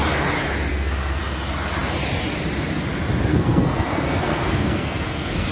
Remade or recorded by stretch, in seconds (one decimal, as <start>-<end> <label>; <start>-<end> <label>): 0.0-0.7 recorded; 0.7-1.2 remade; 1.2-3.3 recorded; 3.3-5.5 remade